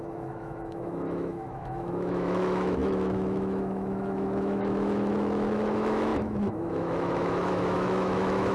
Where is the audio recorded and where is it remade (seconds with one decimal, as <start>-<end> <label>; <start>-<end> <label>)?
0.0-8.5 remade